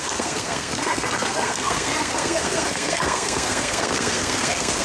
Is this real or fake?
fake